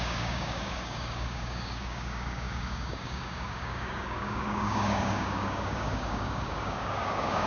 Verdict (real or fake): fake